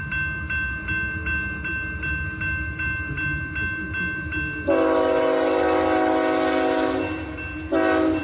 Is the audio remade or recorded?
recorded